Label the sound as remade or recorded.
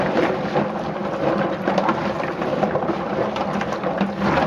recorded